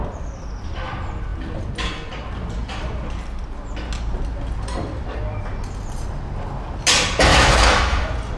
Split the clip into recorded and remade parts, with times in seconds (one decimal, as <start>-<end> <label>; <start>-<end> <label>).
0.0-7.3 recorded; 7.3-8.0 remade; 8.0-8.4 recorded